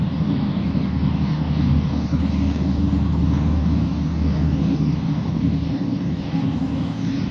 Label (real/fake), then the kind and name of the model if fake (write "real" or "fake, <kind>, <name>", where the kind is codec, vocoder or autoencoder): fake, codec, DAC